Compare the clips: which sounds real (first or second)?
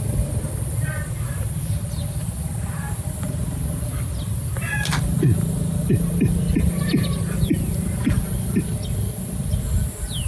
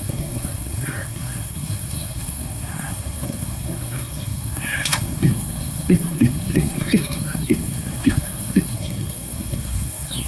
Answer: first